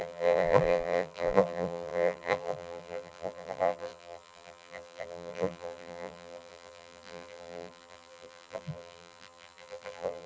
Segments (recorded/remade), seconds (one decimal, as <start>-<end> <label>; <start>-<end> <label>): 0.0-10.3 remade